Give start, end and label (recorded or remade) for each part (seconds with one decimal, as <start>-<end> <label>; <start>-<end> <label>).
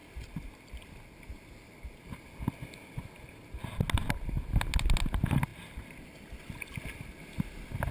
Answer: 0.0-7.9 recorded